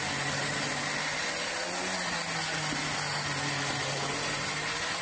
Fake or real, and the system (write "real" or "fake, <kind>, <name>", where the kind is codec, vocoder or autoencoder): real